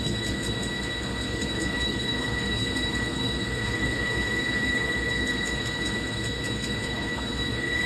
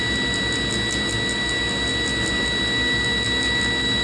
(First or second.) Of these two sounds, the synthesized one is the first